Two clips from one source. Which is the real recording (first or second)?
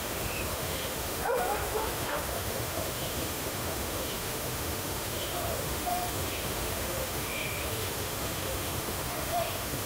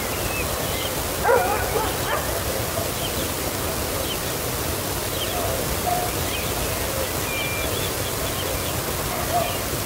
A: second